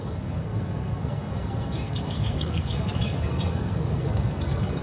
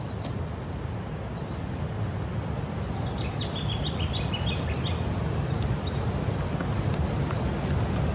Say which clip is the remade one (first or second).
first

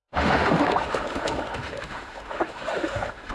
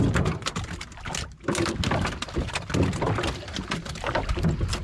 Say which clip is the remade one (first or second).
first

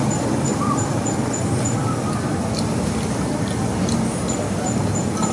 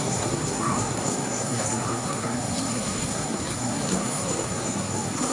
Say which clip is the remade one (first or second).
second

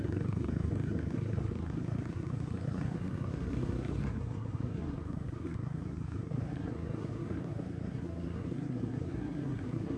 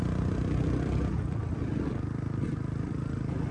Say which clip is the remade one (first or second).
first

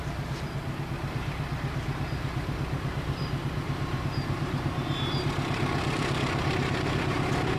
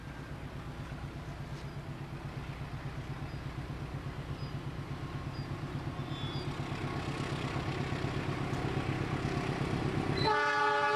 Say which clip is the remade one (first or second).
first